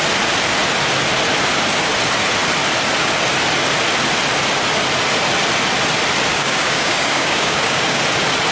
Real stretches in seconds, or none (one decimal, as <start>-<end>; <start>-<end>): 0.0-6.3; 8.0-8.5